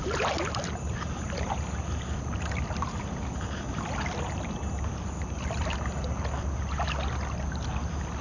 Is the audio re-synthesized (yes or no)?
no